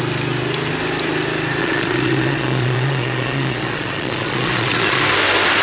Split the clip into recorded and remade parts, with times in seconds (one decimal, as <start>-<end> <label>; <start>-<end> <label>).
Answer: 0.0-1.6 recorded; 1.6-5.0 remade; 5.0-5.6 recorded